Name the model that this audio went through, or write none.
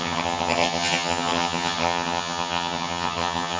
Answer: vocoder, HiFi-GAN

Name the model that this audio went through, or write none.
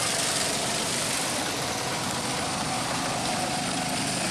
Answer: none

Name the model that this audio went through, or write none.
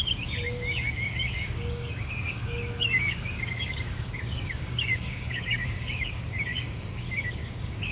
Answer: codec, DAC